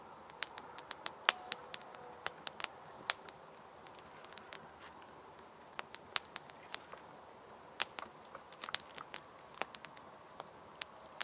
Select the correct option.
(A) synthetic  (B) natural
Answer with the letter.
B